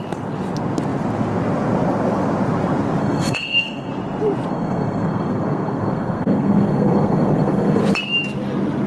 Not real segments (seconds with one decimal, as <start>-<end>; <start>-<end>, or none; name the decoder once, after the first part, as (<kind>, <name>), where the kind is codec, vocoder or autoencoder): 3.0-3.9 (codec, SNAC); 4.5-7.8